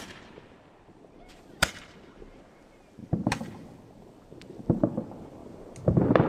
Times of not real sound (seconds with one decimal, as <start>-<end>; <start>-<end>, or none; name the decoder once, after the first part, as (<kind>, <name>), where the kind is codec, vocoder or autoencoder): 0.0-3.0 (vocoder, BigVGAN v2); 4.1-6.3